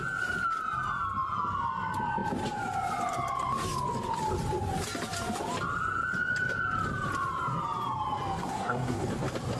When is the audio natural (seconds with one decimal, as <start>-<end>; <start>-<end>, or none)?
0.0-8.4; 9.0-9.6